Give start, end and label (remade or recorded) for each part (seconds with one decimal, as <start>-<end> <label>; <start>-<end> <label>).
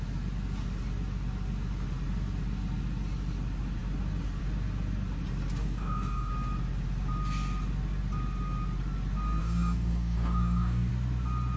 0.0-5.6 recorded; 5.6-6.3 remade; 6.3-9.4 recorded; 9.4-10.9 remade; 10.9-11.6 recorded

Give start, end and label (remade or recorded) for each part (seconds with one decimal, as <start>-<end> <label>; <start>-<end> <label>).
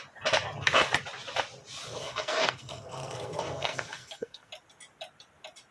0.0-1.9 recorded; 1.9-4.5 remade; 4.5-5.7 recorded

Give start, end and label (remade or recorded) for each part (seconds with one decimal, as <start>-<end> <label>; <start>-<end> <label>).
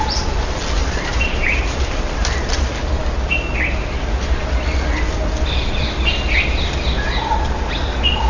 0.0-0.8 recorded; 0.8-2.9 remade; 2.9-8.3 recorded